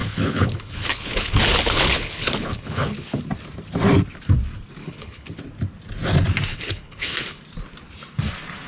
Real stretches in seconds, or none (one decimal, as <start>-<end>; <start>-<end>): 3.2-4.8; 5.4-6.5; 7.4-8.7